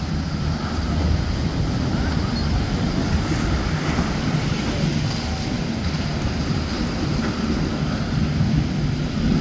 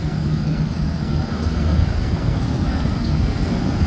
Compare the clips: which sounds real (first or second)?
first